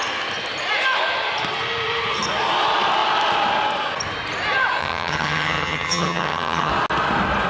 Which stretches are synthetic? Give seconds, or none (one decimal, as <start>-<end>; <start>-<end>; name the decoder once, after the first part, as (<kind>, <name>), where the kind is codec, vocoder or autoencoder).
4.8-6.7 (vocoder, HiFi-GAN)

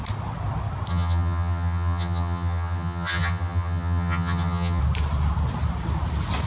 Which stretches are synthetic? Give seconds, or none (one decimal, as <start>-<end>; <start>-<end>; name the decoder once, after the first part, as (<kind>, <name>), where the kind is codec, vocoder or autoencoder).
0.9-4.8 (vocoder, HiFi-GAN)

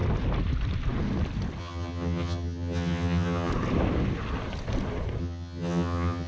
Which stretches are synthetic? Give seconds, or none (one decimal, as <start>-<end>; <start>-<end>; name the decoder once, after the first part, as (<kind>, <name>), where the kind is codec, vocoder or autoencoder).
1.6-3.5 (vocoder, HiFi-GAN); 5.2-6.3

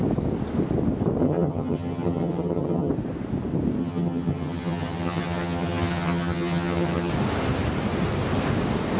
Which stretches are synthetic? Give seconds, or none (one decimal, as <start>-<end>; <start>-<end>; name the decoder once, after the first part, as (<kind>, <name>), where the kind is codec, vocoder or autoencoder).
1.2-2.9 (vocoder, HiFi-GAN); 3.8-7.1